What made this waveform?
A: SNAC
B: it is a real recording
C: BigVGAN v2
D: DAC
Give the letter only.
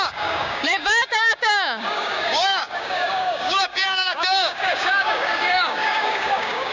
D